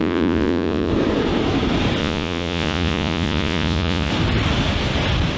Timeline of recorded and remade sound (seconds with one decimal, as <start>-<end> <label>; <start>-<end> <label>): 0.0-0.9 remade; 0.9-2.0 recorded; 2.0-4.1 remade; 4.1-5.4 recorded